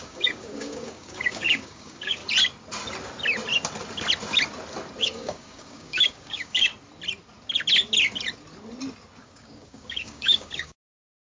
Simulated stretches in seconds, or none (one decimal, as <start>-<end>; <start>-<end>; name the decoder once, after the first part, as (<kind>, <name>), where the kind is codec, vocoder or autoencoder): 0.0-2.2 (codec, DAC); 5.0-6.7; 9.2-11.4